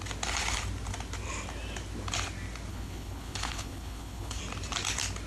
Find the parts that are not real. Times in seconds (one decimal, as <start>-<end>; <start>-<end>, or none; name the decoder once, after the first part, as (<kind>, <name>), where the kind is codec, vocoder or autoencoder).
2.7-4.4 (codec, HILCodec)